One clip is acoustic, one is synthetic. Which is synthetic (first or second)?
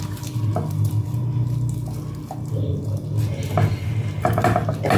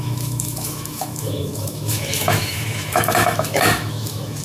second